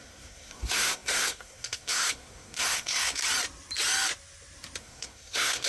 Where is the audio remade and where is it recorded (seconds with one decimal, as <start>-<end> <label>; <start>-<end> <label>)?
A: 0.0-3.2 remade; 3.2-4.8 recorded; 4.8-5.7 remade